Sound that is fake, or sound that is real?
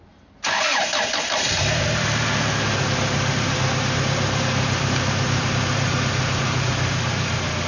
fake